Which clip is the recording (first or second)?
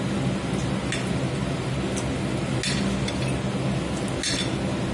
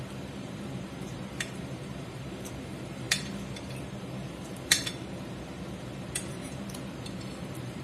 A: first